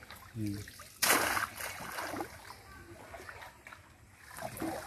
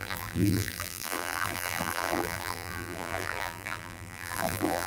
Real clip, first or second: first